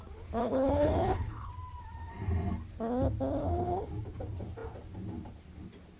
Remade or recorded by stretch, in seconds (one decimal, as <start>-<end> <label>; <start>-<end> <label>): 0.0-0.4 recorded; 0.4-1.5 remade; 1.5-3.4 recorded; 3.4-3.9 remade; 3.9-6.0 recorded